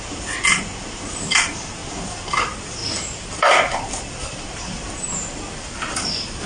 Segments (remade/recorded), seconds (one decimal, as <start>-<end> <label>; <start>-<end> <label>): 0.0-1.8 recorded; 1.8-2.4 remade; 2.4-2.8 recorded; 2.8-6.5 remade